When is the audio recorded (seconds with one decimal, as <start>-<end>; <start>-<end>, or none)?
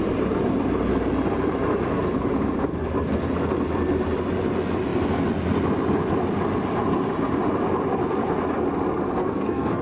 0.0-9.2